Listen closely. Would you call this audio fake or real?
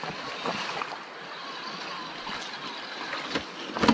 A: real